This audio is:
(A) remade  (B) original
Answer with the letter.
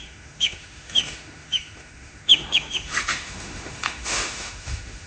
A